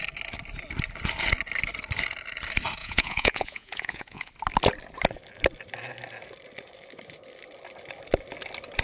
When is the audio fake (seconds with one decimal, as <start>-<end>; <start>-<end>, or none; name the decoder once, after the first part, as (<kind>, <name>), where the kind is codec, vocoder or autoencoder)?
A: 2.8-4.3 (vocoder, Vocos)